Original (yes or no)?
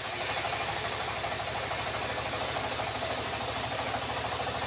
yes